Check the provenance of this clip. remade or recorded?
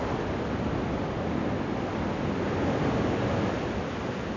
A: recorded